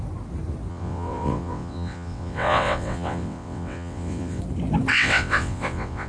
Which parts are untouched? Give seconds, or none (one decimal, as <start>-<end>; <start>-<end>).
0.0-0.7; 4.4-4.9